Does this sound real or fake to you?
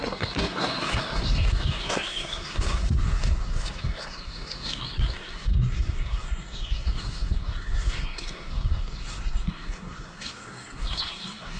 fake